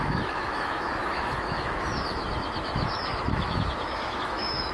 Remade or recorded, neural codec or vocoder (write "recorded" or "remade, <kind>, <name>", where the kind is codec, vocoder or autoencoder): remade, autoencoder, DAC-VAE